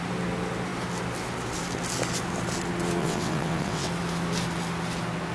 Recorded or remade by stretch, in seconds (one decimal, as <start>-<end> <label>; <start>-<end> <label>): 0.0-3.0 recorded; 3.0-3.9 remade; 3.9-5.3 recorded

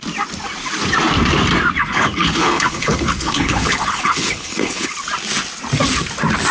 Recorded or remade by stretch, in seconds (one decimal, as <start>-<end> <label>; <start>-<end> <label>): 0.0-1.8 recorded; 1.8-4.9 remade; 4.9-6.5 recorded

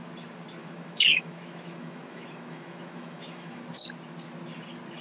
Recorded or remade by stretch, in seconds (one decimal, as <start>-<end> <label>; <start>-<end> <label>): 0.0-0.6 recorded; 0.6-3.6 remade; 3.6-5.0 recorded

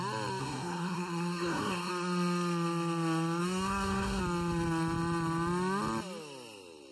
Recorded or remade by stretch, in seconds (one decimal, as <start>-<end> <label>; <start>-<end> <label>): 0.0-0.4 recorded; 0.4-1.9 remade; 1.9-3.4 recorded; 3.4-4.2 remade; 4.2-6.9 recorded

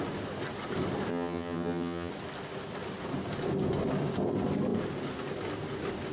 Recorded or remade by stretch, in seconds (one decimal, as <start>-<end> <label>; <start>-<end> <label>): 0.0-1.1 recorded; 1.1-2.1 remade; 2.1-6.1 recorded

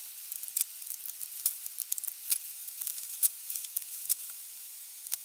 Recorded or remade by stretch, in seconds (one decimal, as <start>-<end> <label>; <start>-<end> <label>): 0.0-2.5 recorded; 2.5-5.2 remade

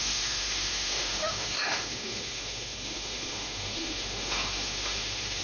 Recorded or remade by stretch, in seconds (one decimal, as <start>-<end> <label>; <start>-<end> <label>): 0.0-5.4 remade